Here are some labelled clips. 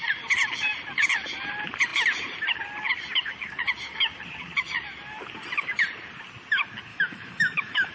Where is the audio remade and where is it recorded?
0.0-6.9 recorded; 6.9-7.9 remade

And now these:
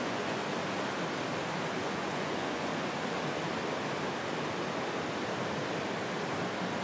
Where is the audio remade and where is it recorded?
0.0-0.4 remade; 0.4-1.8 recorded; 1.8-2.7 remade; 2.7-6.8 recorded

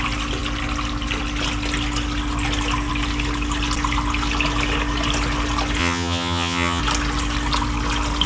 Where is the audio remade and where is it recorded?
0.0-5.8 recorded; 5.8-6.8 remade; 6.8-8.3 recorded

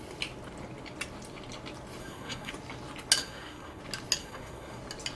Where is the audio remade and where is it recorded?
0.0-2.0 recorded; 2.0-2.5 remade; 2.5-3.2 recorded; 3.2-3.8 remade; 3.8-4.2 recorded; 4.2-4.8 remade; 4.8-5.2 recorded